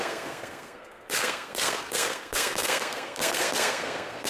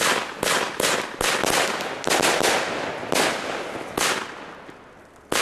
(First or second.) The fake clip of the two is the first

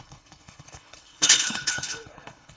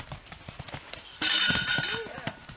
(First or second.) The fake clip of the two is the first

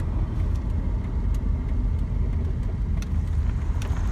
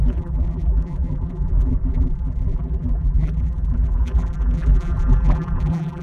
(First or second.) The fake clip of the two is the second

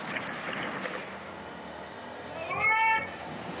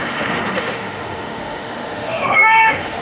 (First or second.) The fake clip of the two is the second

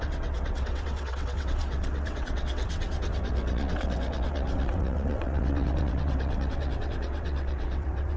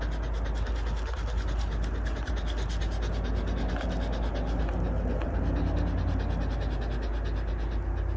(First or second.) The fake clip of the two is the first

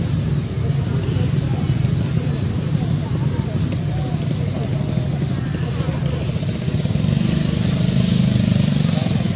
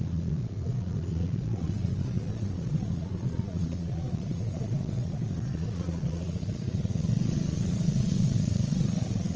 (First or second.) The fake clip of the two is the second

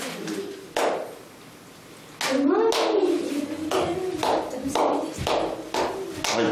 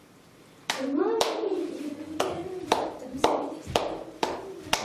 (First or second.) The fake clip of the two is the second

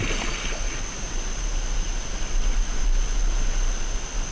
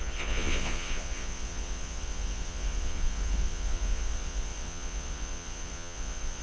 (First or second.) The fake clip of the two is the second